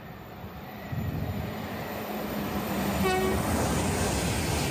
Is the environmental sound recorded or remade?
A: recorded